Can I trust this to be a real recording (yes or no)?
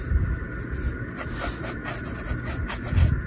yes